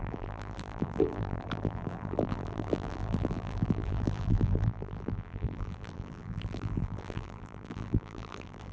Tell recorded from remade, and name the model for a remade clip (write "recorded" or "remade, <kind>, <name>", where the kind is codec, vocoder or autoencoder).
remade, vocoder, BigVGAN v2